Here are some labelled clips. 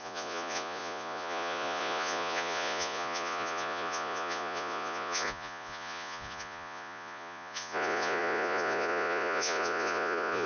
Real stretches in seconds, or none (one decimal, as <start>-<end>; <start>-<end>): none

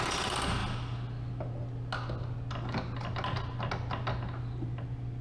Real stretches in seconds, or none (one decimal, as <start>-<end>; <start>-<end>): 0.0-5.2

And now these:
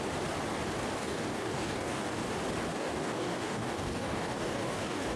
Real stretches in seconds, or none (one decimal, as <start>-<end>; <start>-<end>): 0.0-1.0; 2.3-2.7

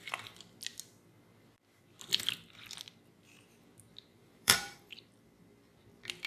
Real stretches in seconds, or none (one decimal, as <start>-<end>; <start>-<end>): 0.0-4.1; 5.0-6.3

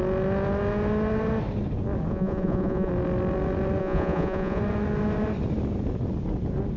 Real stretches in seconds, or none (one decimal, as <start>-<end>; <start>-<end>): 0.0-2.1; 2.9-3.8; 4.6-6.8

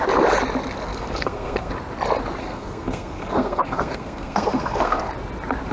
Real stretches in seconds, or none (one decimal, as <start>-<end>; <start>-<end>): 0.0-0.9; 1.7-2.4; 5.0-5.7

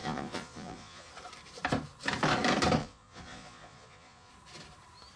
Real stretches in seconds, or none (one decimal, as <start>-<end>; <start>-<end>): 1.1-2.8; 4.3-5.2